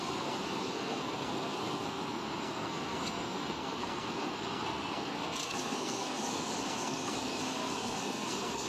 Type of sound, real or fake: fake